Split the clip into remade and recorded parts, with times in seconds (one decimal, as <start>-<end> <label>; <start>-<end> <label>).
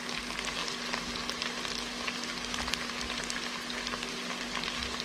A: 0.0-5.0 recorded